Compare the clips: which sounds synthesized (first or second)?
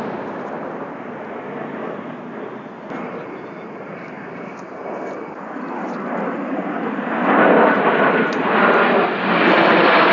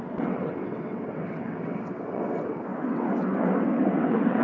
second